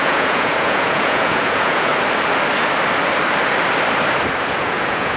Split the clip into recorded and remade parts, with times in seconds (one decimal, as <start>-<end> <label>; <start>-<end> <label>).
0.0-1.9 remade; 1.9-4.5 recorded; 4.5-5.2 remade